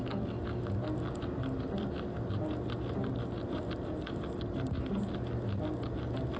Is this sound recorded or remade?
recorded